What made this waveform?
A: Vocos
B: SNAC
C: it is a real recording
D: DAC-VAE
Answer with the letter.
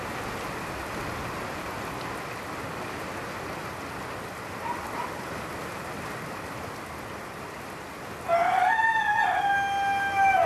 C